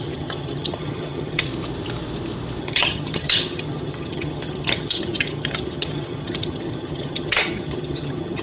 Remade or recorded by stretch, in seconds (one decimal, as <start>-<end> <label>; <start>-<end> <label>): 0.0-1.5 remade; 1.5-2.6 recorded; 2.6-8.4 remade